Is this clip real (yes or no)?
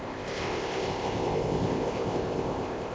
no